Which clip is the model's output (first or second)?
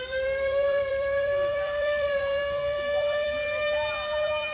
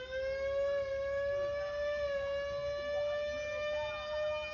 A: first